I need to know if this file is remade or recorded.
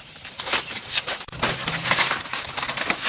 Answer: recorded